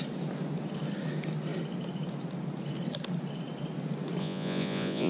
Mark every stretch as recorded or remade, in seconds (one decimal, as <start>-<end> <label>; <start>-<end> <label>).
0.0-4.2 recorded; 4.2-5.1 remade